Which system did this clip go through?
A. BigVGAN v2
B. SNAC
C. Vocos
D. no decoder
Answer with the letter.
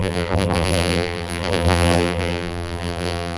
A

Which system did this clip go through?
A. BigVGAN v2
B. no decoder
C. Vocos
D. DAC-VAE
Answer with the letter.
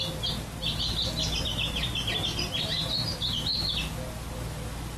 B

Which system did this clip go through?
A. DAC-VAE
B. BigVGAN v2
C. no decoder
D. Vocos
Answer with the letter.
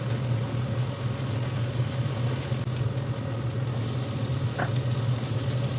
C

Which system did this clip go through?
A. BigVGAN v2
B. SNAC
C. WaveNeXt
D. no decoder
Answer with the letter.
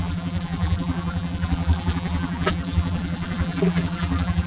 A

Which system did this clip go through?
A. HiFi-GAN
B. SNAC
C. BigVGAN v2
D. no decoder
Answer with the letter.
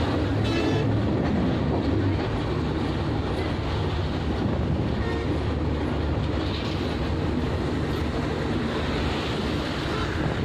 D